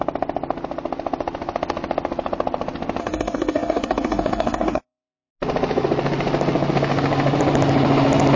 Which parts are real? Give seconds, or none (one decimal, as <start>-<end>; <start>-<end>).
0.0-3.0; 5.3-8.4